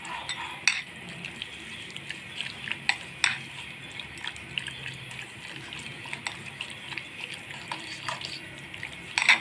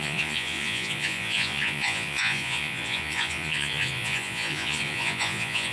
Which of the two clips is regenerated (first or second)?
second